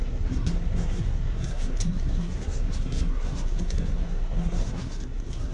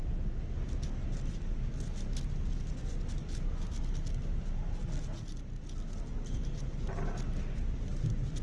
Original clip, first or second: second